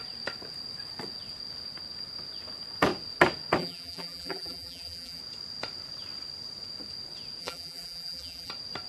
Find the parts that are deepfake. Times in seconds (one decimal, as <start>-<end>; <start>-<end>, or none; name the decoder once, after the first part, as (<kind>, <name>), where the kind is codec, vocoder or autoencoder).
3.6-5.2 (vocoder, BigVGAN v2); 7.4-8.5